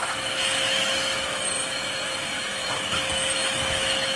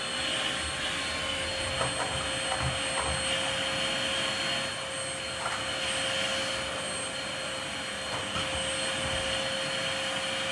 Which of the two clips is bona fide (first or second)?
second